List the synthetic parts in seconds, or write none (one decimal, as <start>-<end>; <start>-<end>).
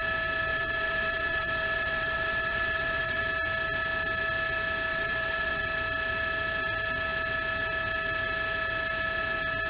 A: 0.5-3.2; 4.9-5.6